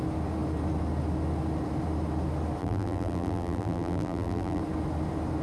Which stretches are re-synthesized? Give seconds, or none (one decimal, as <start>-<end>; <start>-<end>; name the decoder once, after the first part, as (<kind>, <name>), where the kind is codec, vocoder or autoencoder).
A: 2.6-4.6 (vocoder, BigVGAN v2)